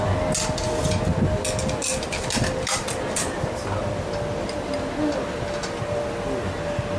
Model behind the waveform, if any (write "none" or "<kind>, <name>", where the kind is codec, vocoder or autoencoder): none